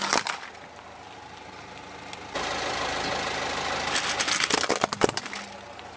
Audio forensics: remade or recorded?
recorded